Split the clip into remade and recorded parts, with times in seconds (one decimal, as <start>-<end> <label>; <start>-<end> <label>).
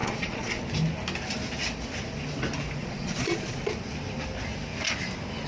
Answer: 0.0-0.6 remade; 0.6-2.8 recorded; 2.8-3.6 remade; 3.6-5.5 recorded